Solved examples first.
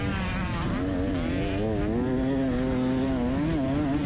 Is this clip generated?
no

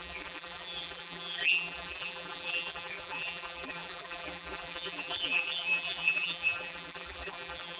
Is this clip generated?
yes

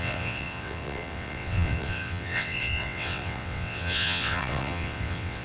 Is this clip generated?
yes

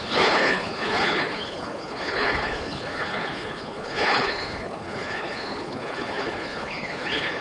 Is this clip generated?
yes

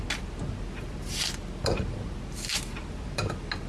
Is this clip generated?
no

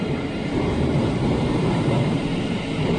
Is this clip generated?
yes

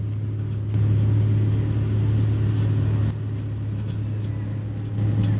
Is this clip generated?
no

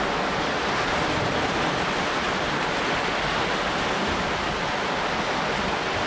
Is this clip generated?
no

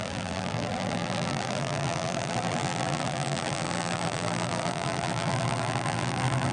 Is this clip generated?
yes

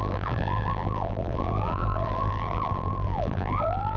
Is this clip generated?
yes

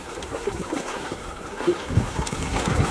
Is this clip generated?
yes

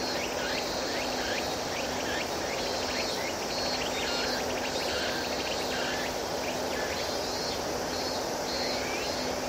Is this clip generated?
no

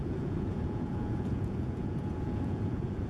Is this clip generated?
yes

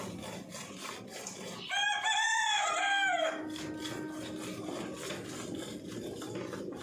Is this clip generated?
no